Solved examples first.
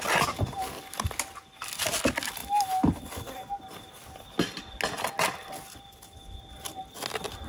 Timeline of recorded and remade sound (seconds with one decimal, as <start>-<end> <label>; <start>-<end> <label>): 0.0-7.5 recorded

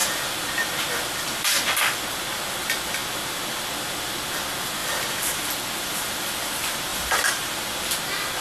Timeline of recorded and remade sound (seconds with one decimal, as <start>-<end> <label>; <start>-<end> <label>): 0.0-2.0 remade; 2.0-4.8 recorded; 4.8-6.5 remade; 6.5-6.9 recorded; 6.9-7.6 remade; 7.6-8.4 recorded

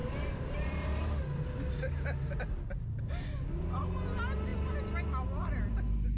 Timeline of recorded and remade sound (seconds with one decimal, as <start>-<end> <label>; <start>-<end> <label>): 0.0-1.7 remade; 1.7-6.2 recorded

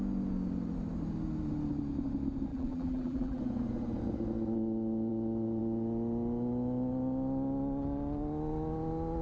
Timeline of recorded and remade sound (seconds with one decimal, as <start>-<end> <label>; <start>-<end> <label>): 0.0-2.5 recorded; 2.5-3.4 remade; 3.4-9.2 recorded

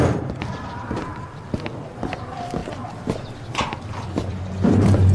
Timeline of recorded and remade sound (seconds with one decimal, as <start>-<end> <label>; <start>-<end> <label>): 0.0-2.6 remade; 2.6-3.5 recorded; 3.5-5.1 remade